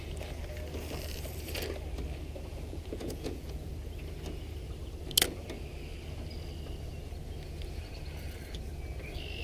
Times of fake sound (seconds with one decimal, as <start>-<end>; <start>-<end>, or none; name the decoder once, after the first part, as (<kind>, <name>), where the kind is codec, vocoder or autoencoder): 2.5-3.7 (vocoder, Vocos)